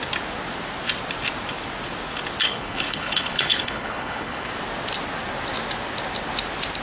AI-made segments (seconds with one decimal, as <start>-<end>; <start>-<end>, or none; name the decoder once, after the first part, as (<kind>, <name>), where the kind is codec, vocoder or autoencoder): 2.5-4.5 (codec, HILCodec)